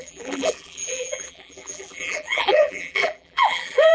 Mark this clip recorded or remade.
remade